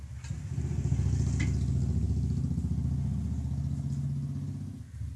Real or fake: real